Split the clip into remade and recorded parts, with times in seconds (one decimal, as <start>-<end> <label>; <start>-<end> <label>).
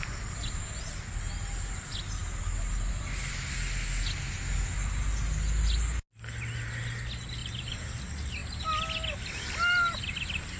0.0-7.4 recorded; 7.4-8.0 remade; 8.0-10.6 recorded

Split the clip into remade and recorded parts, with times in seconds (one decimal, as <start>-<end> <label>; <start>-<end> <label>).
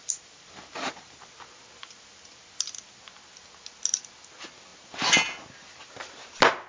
0.0-6.7 recorded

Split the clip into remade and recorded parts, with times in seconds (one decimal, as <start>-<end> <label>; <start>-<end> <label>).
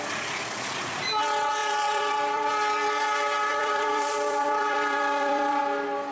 0.0-1.6 recorded; 1.6-2.5 remade; 2.5-3.5 recorded; 3.5-5.6 remade; 5.6-6.1 recorded